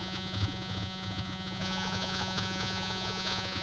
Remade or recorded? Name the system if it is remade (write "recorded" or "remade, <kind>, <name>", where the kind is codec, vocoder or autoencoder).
remade, vocoder, Vocos